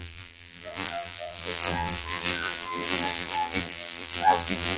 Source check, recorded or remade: remade